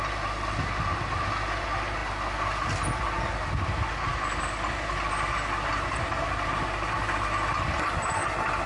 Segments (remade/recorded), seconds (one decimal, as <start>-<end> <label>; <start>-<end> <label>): 0.0-8.7 recorded